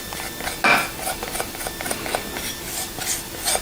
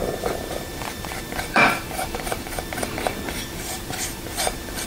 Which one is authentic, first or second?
first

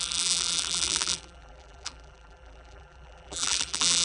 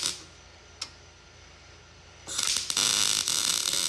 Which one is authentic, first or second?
second